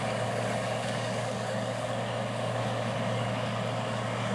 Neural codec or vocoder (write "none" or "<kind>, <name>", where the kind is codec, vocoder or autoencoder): codec, DAC